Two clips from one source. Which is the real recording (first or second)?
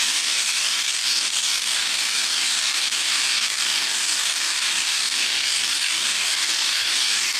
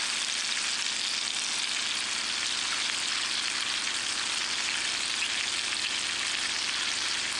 second